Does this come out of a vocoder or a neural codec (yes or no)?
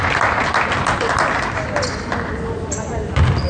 no